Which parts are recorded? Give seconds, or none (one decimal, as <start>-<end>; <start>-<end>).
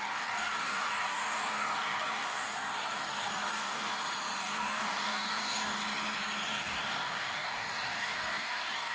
3.9-4.4; 5.8-6.5